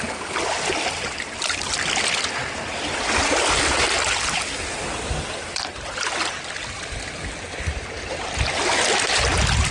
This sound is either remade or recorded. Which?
recorded